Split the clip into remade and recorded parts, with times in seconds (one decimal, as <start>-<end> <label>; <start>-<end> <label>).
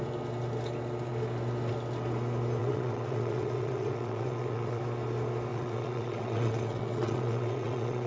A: 0.0-2.6 recorded; 2.6-4.8 remade; 4.8-5.5 recorded; 5.5-8.1 remade